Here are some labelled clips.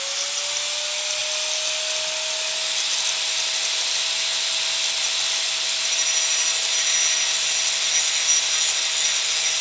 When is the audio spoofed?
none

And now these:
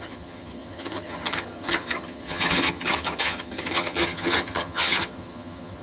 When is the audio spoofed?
0.0-5.8 (vocoder, HiFi-GAN)